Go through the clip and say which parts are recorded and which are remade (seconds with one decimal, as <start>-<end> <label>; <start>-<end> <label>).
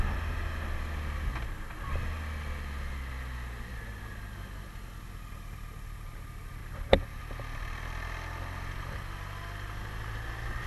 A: 0.0-10.7 recorded